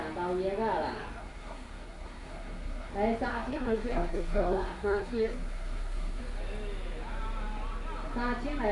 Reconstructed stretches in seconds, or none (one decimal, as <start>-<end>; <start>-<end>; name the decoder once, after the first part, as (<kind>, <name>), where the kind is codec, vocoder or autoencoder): 1.2-2.9 (codec, SNAC); 3.3-6.2